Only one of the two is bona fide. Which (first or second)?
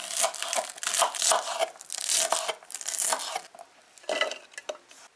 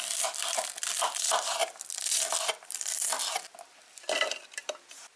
first